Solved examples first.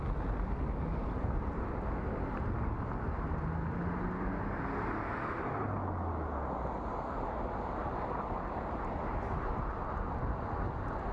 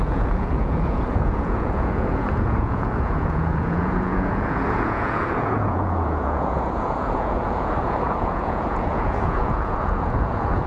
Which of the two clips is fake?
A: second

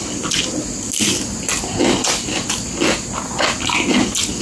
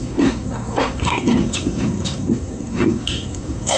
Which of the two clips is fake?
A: second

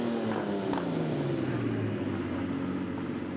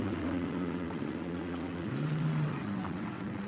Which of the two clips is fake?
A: second